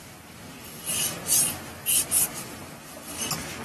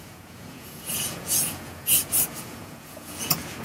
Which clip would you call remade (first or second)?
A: second